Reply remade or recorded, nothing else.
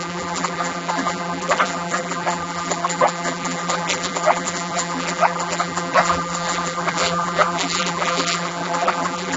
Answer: remade